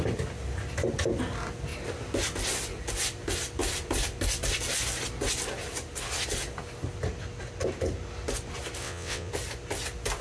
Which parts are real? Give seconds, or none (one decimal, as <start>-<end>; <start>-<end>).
0.0-8.8; 9.3-10.2